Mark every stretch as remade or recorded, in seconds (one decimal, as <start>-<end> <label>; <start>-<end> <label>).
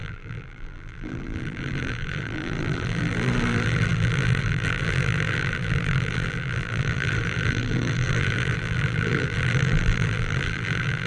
0.0-11.1 remade